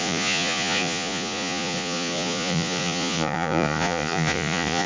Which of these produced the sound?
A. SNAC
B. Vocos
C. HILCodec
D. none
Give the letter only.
B